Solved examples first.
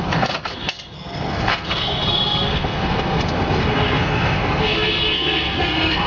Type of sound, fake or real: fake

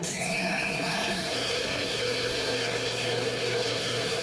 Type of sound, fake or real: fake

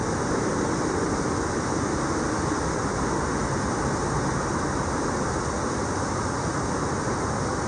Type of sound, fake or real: real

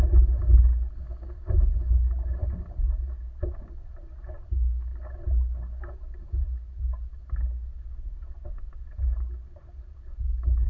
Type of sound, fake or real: real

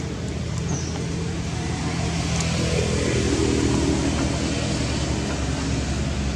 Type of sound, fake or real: real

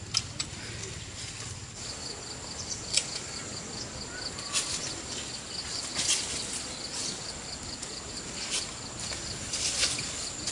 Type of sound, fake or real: real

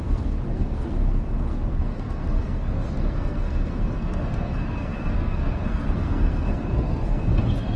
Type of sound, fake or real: fake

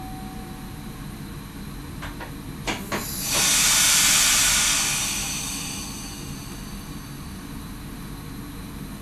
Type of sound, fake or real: real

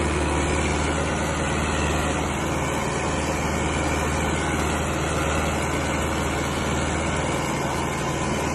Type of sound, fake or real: real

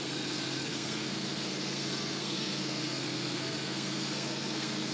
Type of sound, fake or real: fake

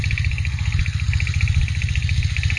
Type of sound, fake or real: real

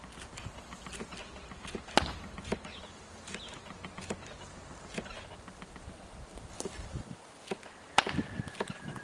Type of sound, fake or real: real